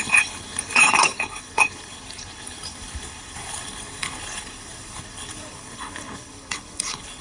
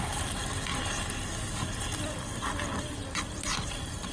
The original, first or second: second